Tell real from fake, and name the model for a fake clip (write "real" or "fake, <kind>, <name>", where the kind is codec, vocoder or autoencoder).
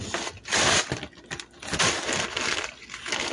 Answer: real